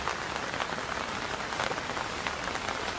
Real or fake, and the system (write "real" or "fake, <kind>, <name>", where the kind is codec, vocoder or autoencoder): real